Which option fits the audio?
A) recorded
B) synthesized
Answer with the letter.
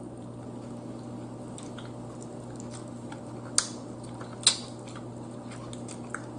A